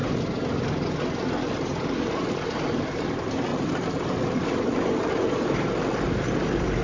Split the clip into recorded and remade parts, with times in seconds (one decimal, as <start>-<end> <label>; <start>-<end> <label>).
0.0-6.8 recorded